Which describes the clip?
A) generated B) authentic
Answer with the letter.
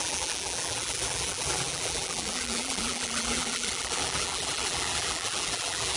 A